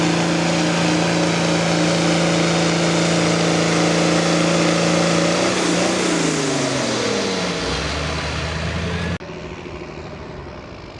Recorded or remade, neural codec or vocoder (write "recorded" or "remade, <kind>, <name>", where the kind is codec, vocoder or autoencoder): recorded